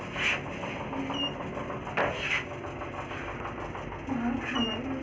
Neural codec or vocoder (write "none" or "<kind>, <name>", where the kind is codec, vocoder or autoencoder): none